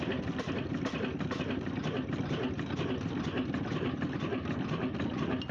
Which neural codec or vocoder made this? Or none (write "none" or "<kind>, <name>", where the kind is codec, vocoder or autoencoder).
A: none